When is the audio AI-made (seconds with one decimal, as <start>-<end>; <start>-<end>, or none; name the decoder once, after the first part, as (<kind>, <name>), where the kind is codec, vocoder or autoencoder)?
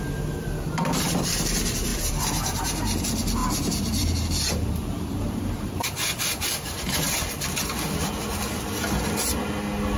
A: 1.9-3.0 (vocoder, BigVGAN v2); 3.4-7.3